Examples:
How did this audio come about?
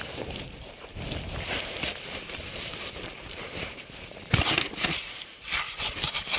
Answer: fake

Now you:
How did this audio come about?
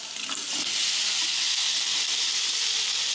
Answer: real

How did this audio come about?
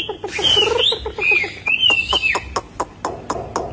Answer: real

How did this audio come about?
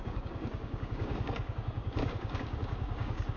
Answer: fake